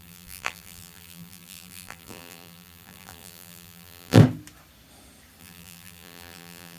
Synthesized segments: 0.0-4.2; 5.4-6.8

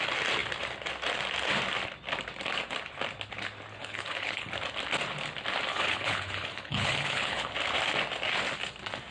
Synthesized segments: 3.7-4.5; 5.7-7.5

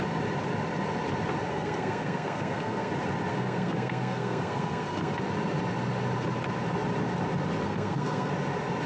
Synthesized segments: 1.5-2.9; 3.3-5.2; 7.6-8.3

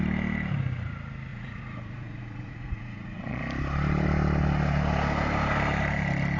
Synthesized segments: 1.3-3.4

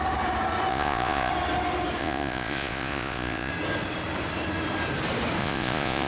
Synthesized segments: 0.7-1.3; 2.0-3.5; 5.4-6.1

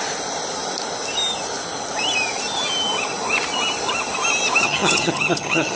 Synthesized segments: 4.6-5.8

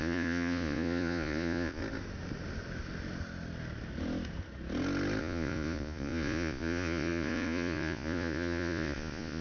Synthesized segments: 0.0-1.8; 5.2-9.4

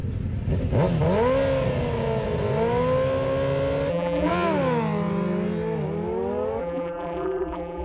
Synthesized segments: 3.9-4.3; 6.6-7.8